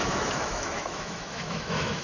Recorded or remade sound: remade